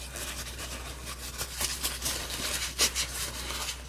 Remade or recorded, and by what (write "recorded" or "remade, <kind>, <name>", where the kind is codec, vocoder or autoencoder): recorded